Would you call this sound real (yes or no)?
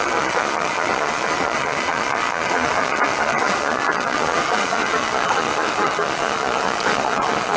no